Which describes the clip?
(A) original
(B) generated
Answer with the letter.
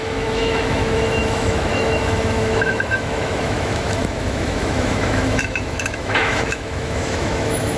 B